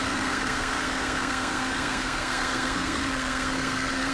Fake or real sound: fake